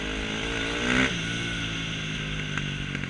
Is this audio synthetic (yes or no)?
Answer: no